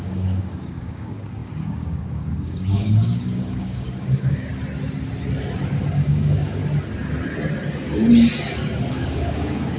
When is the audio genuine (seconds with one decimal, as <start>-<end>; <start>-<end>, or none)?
4.5-5.9; 6.6-8.9